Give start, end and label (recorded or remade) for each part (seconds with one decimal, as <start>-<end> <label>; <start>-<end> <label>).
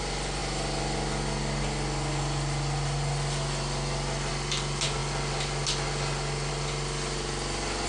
0.0-7.9 recorded